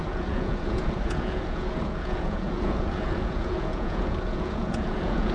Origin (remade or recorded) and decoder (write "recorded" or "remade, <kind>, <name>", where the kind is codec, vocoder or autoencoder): remade, vocoder, Vocos